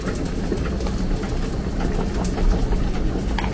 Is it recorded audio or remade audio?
recorded